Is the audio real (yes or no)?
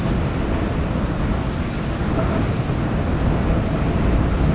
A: yes